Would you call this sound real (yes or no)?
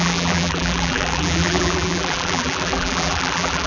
no